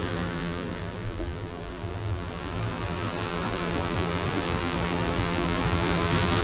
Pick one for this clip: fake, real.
fake